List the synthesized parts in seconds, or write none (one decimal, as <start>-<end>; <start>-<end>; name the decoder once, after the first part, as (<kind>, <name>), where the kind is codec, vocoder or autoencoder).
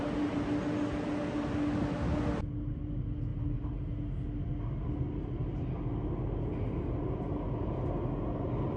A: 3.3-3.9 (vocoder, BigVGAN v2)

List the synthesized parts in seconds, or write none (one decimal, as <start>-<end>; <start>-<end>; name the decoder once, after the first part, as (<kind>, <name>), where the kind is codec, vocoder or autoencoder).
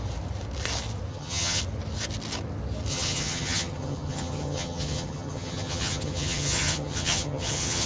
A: 1.1-1.6 (vocoder, HiFi-GAN); 2.9-7.9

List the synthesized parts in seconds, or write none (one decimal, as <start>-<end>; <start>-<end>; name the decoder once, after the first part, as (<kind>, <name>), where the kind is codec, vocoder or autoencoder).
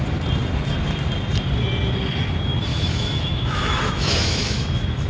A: 2.7-5.1 (autoencoder, DAC-VAE)